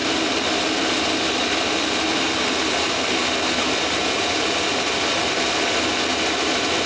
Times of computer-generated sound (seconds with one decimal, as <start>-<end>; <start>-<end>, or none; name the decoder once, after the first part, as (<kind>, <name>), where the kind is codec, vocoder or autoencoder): 0.0-4.1 (vocoder, BigVGAN v2); 6.1-6.9